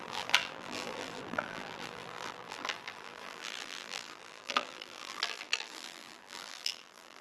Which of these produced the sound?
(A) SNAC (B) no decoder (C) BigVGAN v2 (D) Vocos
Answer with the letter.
C